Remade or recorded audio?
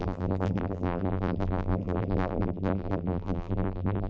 remade